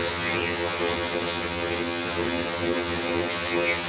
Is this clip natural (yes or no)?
no